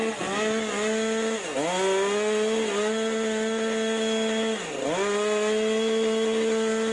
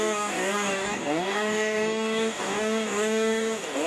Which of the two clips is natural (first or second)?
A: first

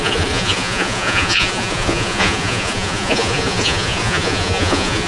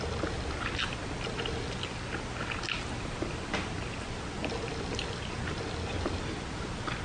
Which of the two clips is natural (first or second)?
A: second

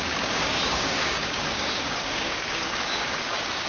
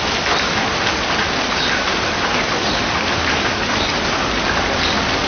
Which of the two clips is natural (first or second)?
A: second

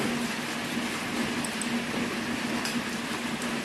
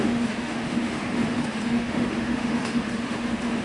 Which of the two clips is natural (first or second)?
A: first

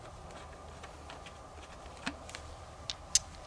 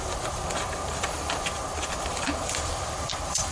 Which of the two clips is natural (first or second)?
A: first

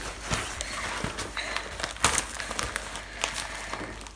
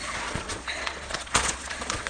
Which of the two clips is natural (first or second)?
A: first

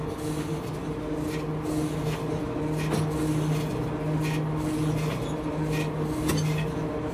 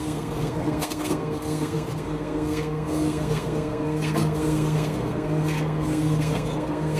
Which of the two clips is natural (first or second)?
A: first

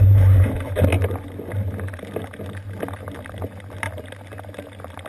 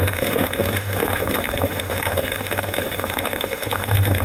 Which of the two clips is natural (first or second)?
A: first